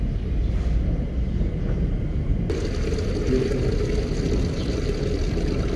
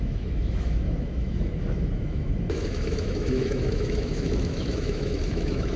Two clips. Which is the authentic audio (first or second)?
first